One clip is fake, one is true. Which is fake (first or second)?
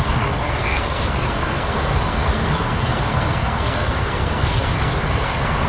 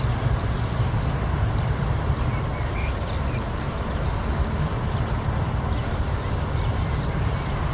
first